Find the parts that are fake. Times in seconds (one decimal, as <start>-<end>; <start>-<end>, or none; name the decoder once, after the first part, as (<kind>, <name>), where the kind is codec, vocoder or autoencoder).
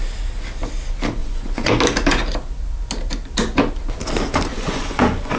1.2-1.7 (vocoder, Vocos); 4.5-5.4